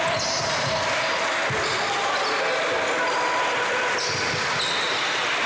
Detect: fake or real real